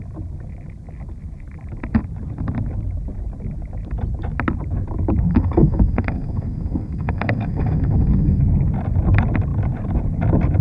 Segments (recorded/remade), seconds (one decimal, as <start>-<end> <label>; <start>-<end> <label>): 0.0-5.3 recorded; 5.3-8.4 remade; 8.4-10.6 recorded